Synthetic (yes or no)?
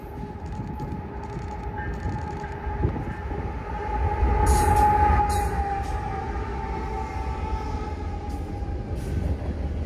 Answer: no